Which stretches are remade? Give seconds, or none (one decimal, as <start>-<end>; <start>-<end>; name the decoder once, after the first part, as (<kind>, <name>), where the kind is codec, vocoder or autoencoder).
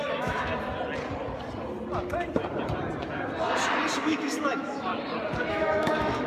0.0-0.5 (autoencoder, DAC-VAE); 4.0-4.9; 5.5-6.3